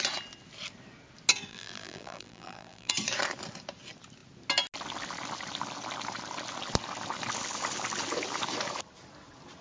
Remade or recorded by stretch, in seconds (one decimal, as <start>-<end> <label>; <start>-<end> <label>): 0.0-1.5 recorded; 1.5-2.9 remade; 2.9-9.6 recorded